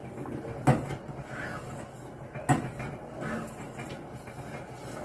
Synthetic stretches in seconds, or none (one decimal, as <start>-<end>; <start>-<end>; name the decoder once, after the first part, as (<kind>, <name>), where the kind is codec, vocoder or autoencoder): none